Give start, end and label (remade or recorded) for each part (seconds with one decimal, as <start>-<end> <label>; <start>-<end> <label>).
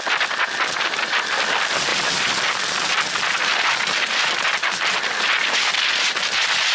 0.0-1.9 recorded; 1.9-2.6 remade; 2.6-6.7 recorded